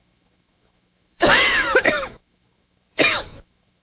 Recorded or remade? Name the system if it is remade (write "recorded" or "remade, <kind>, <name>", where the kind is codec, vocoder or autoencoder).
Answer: remade, autoencoder, DAC-VAE